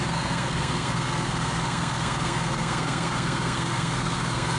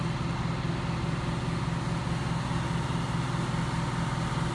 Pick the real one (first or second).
second